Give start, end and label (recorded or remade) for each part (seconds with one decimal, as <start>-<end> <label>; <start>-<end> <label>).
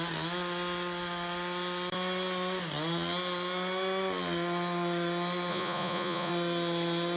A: 0.0-5.5 recorded; 5.5-6.3 remade; 6.3-7.2 recorded